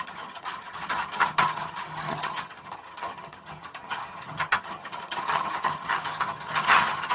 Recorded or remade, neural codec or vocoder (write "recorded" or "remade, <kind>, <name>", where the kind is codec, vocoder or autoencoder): remade, vocoder, HiFi-GAN